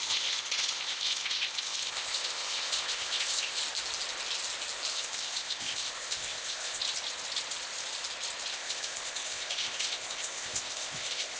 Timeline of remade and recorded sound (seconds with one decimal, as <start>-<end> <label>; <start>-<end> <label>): 0.0-3.6 remade; 3.6-4.9 recorded; 4.9-6.8 remade; 6.8-8.5 recorded; 8.5-11.4 remade

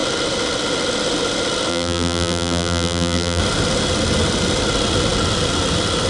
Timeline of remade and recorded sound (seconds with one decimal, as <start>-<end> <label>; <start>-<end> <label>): 0.0-1.7 recorded; 1.7-3.4 remade; 3.4-6.1 recorded

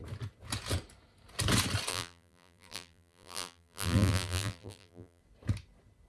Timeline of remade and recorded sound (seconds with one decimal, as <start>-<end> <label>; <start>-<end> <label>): 0.0-1.9 recorded; 1.9-5.2 remade; 5.2-6.1 recorded

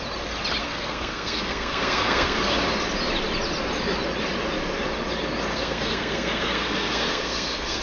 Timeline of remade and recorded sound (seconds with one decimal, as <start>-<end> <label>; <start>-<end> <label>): 0.0-0.6 recorded; 0.6-2.5 remade; 2.5-5.5 recorded; 5.5-7.8 remade

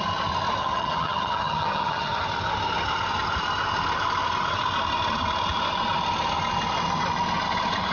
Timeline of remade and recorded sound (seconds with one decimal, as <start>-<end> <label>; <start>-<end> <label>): 0.0-0.6 recorded; 0.6-2.2 remade; 2.2-7.9 recorded